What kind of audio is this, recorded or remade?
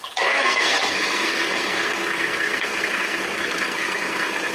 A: remade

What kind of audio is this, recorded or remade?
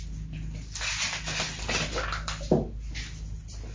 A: recorded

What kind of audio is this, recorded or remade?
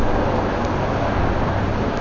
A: recorded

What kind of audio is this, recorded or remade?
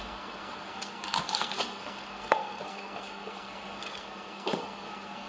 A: remade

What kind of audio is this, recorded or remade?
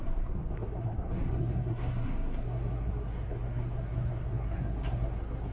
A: remade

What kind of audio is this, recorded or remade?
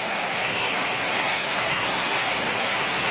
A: remade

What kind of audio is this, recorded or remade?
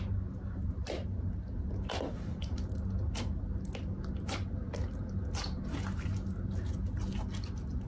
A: recorded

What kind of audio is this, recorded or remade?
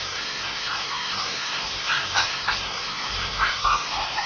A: remade